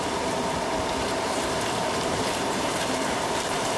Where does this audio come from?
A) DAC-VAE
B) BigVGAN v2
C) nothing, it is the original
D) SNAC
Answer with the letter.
B